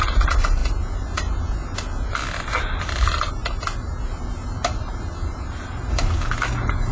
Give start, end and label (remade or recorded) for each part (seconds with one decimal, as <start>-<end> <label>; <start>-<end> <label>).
0.0-0.6 remade; 0.6-2.8 recorded; 2.8-3.4 remade; 3.4-4.1 recorded; 4.1-6.9 remade